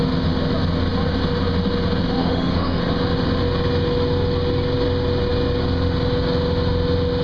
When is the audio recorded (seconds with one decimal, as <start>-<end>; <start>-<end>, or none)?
0.0-2.2; 2.8-7.2